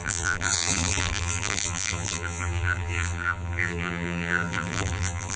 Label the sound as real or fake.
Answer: fake